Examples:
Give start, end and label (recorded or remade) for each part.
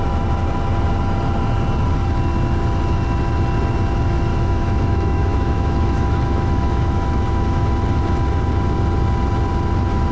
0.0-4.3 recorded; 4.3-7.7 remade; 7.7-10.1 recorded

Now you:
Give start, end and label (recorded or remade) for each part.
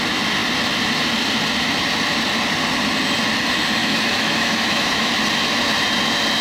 0.0-3.8 recorded; 3.8-5.1 remade; 5.1-6.4 recorded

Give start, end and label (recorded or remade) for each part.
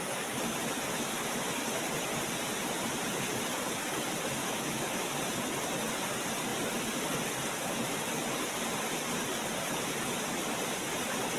0.0-4.4 recorded; 4.4-5.1 remade; 5.1-11.4 recorded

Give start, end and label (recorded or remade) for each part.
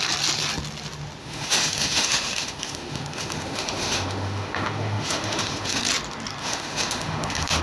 0.0-1.2 recorded; 1.2-5.8 remade; 5.8-6.4 recorded; 6.4-7.6 remade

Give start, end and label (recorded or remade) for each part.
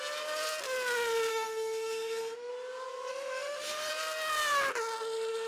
0.0-1.3 recorded; 1.3-2.5 remade; 2.5-3.1 recorded; 3.1-3.9 remade; 3.9-5.5 recorded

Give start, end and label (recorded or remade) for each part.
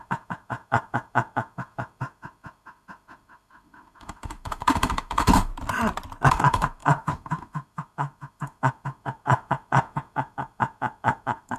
0.0-5.5 remade; 5.5-6.3 recorded; 6.3-11.6 remade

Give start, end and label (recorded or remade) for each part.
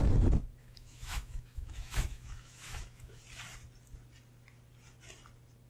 0.0-0.6 recorded; 0.6-3.2 remade; 3.2-5.7 recorded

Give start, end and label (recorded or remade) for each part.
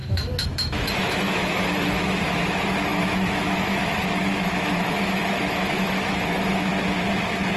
0.0-6.7 remade; 6.7-7.6 recorded